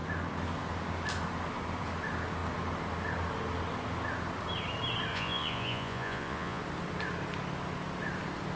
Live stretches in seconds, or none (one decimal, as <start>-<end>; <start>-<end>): 0.0-5.1; 6.6-8.6